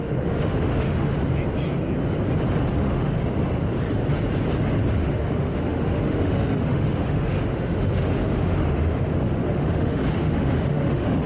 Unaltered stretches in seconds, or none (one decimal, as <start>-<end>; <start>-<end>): 1.1-2.7; 3.2-4.9